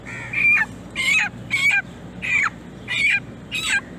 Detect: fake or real real